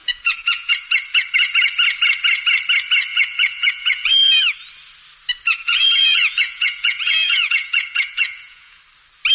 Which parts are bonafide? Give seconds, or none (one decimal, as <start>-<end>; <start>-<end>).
0.7-3.1; 4.3-5.5; 8.8-9.3